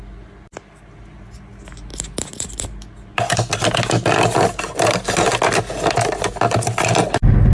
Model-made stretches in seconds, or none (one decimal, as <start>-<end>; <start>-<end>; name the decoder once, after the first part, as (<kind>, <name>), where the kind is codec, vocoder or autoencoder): none